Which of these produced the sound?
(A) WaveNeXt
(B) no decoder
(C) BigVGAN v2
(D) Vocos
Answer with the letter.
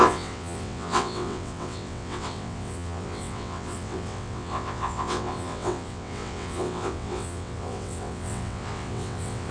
A